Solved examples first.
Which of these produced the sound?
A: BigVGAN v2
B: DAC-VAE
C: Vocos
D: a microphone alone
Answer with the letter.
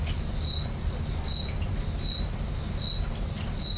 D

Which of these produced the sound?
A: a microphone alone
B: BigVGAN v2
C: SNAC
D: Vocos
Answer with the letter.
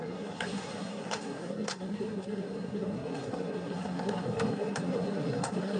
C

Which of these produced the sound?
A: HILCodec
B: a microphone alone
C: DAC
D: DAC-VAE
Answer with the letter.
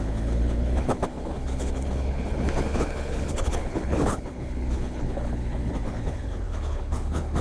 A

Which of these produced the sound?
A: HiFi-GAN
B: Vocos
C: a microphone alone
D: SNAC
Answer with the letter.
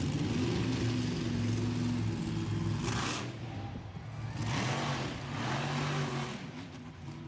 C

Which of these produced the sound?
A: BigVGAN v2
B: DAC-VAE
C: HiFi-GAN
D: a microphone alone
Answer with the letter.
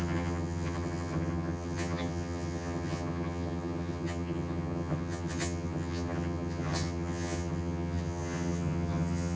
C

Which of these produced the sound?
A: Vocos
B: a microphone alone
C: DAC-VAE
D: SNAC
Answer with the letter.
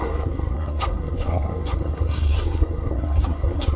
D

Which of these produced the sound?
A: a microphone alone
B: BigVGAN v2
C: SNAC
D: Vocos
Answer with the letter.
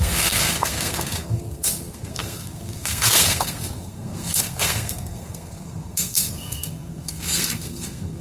C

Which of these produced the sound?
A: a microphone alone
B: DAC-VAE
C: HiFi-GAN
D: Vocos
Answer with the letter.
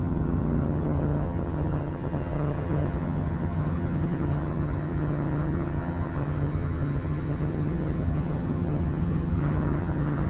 C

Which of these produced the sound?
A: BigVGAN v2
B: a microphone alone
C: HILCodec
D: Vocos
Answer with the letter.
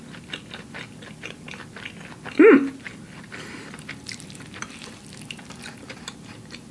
B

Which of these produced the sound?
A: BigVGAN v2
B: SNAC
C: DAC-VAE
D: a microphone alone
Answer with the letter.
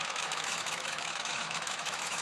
C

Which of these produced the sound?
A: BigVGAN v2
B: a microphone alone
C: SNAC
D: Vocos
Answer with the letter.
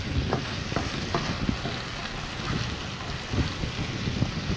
B